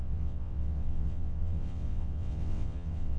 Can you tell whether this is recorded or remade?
remade